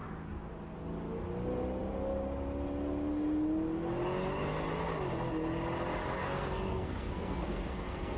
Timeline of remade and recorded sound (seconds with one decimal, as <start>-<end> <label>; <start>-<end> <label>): 0.0-6.2 recorded; 6.2-8.2 remade